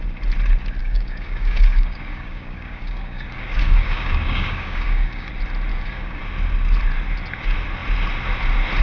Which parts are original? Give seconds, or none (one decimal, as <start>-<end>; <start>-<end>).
0.0-0.8; 5.3-5.7; 6.2-8.8